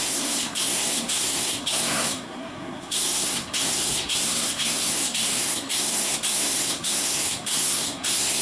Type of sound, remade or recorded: remade